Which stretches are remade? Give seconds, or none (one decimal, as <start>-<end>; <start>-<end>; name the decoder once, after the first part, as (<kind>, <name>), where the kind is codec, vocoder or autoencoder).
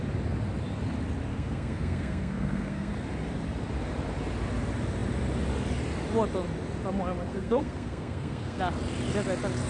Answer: 1.3-2.9 (codec, SNAC); 7.3-8.6